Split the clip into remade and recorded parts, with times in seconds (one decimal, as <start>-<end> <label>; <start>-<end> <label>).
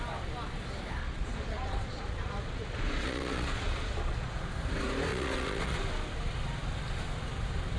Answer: 0.0-1.0 recorded; 1.0-4.5 remade; 4.5-5.1 recorded; 5.1-5.8 remade; 5.8-7.8 recorded